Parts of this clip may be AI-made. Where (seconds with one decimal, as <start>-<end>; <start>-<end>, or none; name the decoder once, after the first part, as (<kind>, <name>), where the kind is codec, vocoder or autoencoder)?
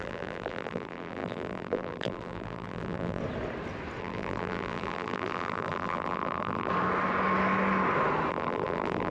0.0-3.2 (vocoder, BigVGAN v2); 4.0-6.7; 8.3-9.1